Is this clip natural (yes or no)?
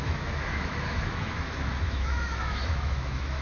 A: no